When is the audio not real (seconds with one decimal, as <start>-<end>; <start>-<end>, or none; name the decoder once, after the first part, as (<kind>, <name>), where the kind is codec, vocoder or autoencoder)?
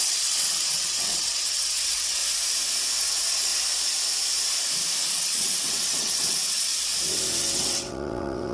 0.0-2.2 (vocoder, WaveNeXt); 3.0-3.5; 5.1-6.7; 7.4-8.5